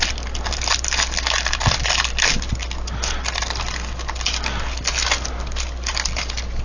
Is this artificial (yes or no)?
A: no